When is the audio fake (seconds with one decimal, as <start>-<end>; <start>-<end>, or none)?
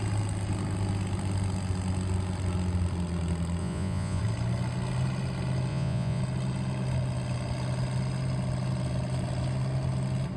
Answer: 3.6-4.2; 5.7-6.2